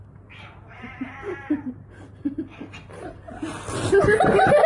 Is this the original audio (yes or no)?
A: yes